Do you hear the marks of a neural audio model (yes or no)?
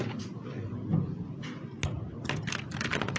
no